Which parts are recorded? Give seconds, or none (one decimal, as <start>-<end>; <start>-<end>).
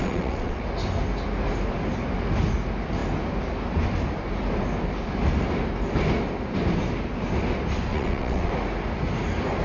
0.6-7.9; 8.5-9.6